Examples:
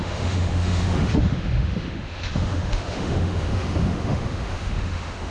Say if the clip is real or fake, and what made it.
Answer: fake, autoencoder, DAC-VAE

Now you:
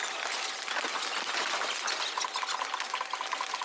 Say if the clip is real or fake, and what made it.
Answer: real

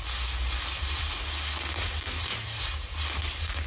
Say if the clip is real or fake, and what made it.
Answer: real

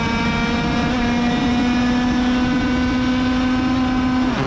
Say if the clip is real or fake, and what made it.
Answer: real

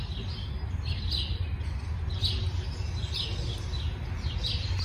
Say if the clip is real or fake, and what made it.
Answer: real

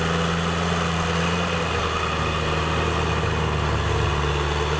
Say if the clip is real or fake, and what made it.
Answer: real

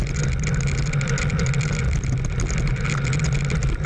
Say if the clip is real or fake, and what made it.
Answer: real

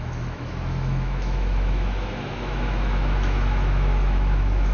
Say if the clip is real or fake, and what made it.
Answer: fake, autoencoder, DAC-VAE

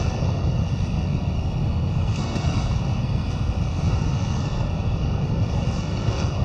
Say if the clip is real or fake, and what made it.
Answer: fake, codec, SNAC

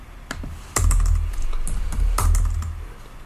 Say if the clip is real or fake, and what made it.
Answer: real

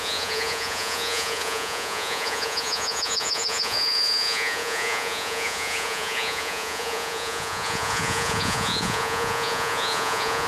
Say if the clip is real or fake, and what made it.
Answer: fake, vocoder, Vocos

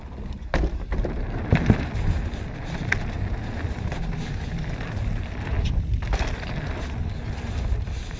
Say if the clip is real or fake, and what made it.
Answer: real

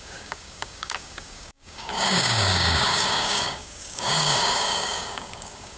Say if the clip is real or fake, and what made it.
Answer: fake, codec, DAC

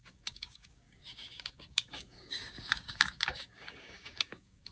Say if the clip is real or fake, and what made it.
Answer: fake, codec, DAC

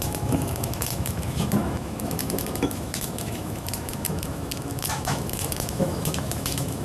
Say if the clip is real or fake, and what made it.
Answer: fake, autoencoder, DAC-VAE